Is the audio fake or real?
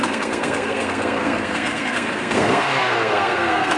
fake